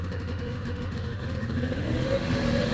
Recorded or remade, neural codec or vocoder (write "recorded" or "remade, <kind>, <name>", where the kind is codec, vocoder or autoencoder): remade, autoencoder, DAC-VAE